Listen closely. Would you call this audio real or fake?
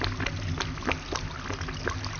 real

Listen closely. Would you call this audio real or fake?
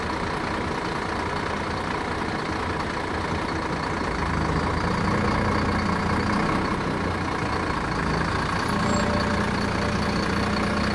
real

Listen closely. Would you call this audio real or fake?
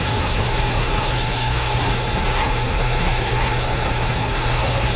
fake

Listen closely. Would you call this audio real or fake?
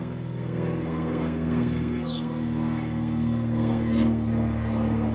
fake